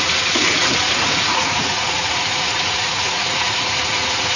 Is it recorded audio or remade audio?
remade